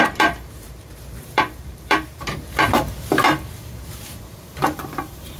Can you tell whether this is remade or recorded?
remade